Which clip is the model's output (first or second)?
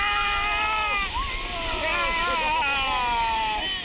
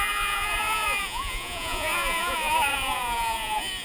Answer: second